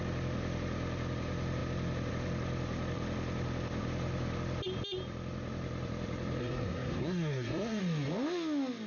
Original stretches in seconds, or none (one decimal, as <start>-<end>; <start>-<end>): 0.0-6.4; 7.8-8.9